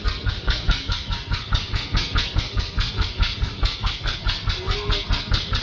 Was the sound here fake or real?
fake